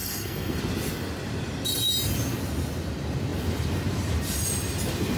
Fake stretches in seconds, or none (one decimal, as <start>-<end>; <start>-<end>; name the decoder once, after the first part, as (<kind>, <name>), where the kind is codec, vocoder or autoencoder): 0.0-0.6 (codec, SNAC)